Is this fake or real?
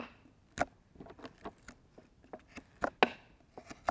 real